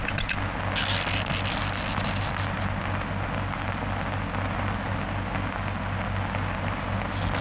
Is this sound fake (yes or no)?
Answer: no